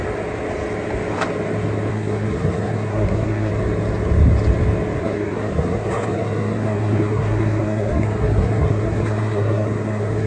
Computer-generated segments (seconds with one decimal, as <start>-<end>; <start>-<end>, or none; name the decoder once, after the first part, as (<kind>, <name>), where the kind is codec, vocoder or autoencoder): 1.9-3.5 (codec, SNAC); 5.0-10.3